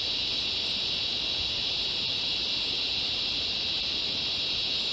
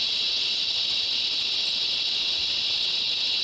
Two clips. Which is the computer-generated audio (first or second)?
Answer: second